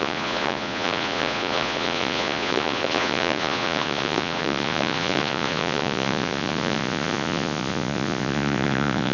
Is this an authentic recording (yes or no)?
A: no